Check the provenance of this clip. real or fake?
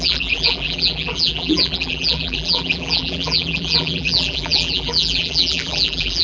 fake